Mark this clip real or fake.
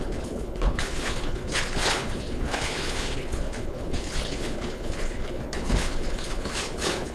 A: fake